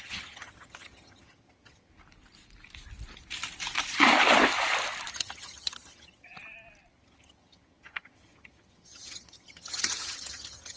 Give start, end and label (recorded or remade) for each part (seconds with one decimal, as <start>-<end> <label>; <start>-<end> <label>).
0.0-1.9 remade; 1.9-5.1 recorded; 5.1-6.3 remade; 6.3-6.9 recorded; 6.9-10.8 remade